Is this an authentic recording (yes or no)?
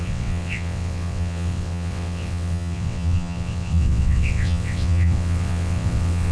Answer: no